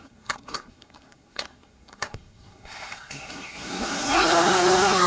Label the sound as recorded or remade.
remade